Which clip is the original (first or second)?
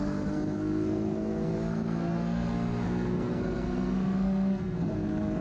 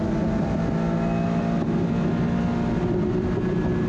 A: second